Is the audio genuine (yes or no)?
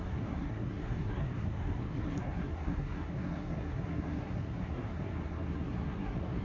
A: no